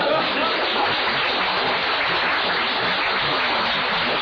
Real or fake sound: real